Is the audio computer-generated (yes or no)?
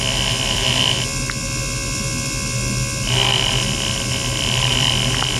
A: no